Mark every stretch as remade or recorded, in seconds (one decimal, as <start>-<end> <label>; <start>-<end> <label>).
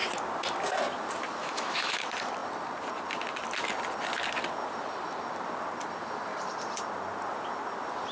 0.0-1.4 recorded; 1.4-2.0 remade; 2.0-8.1 recorded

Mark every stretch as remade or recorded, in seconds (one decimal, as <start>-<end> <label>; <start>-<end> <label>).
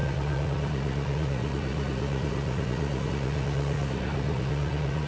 0.0-5.1 remade